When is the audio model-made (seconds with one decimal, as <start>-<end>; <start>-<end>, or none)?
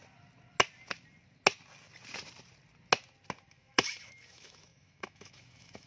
3.5-5.9